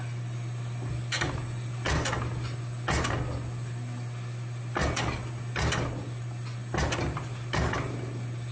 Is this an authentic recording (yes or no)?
yes